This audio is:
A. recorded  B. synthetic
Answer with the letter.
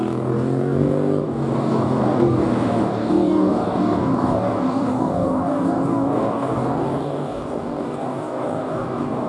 B